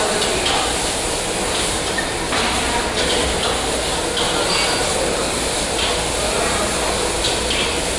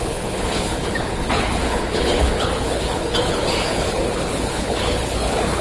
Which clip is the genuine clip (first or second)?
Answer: first